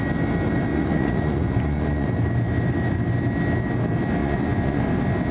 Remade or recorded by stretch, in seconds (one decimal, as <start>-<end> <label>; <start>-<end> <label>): 0.0-0.7 recorded; 0.7-2.1 remade; 2.1-4.2 recorded; 4.2-4.8 remade; 4.8-5.3 recorded